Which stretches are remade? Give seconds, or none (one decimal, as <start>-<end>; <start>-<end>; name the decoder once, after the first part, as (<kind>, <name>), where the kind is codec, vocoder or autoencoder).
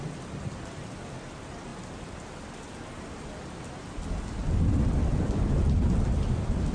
none